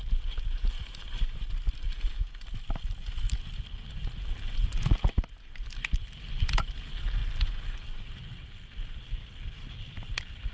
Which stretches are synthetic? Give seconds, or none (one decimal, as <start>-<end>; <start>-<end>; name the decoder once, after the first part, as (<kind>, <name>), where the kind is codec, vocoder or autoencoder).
none